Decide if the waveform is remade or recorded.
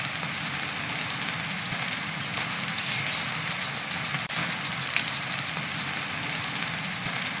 recorded